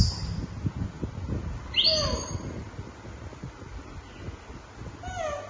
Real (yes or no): yes